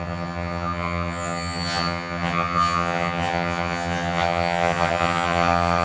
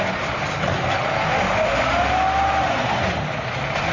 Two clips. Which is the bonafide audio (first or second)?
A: second